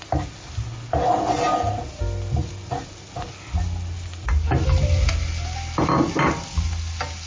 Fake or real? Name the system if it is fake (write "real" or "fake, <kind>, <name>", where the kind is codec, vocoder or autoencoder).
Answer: real